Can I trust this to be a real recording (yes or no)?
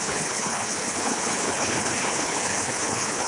no